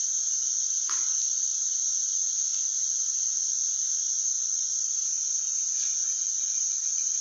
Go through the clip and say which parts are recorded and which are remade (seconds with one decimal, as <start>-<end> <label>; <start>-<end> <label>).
0.0-2.5 recorded; 2.5-3.7 remade; 3.7-4.3 recorded; 4.3-5.0 remade; 5.0-6.0 recorded; 6.0-7.2 remade